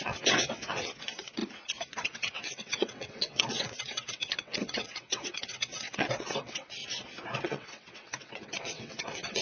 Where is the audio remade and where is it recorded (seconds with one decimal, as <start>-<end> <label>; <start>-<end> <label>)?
0.0-1.4 remade; 1.4-1.9 recorded; 1.9-6.8 remade; 6.8-7.4 recorded; 7.4-9.4 remade